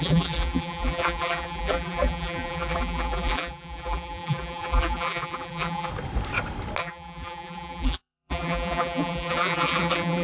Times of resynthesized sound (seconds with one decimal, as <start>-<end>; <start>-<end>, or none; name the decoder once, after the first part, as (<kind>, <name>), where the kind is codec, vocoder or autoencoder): 0.0-5.9 (vocoder, BigVGAN v2); 6.8-10.2